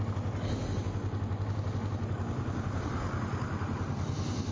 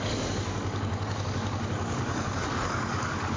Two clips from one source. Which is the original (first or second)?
first